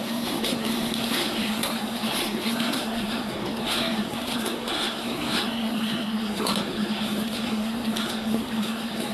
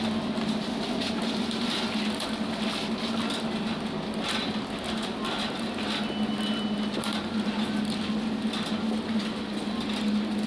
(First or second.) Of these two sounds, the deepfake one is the first